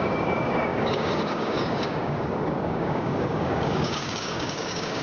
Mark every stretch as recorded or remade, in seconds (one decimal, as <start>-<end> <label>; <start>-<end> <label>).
0.0-5.0 remade